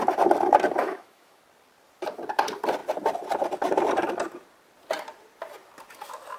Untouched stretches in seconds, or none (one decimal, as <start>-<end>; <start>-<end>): 0.0-0.8; 1.4-6.4

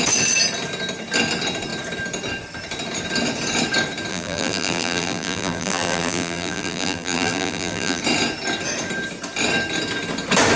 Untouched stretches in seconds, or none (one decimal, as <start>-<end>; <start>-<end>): 0.0-4.1; 8.0-10.6